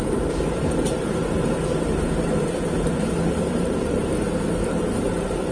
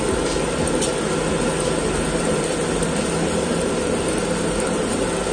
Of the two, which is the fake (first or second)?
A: first